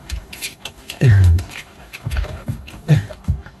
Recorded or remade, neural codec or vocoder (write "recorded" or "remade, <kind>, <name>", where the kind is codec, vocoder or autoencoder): remade, codec, DAC